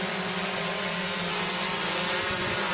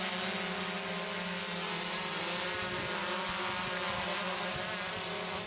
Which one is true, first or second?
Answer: second